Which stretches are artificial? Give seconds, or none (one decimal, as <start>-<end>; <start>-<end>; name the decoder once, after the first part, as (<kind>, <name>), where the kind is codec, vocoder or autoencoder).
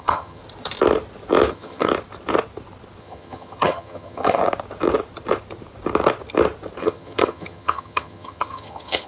0.0-0.4 (vocoder, HiFi-GAN); 1.5-1.9; 3.0-4.4; 6.8-9.1